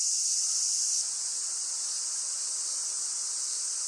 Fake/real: real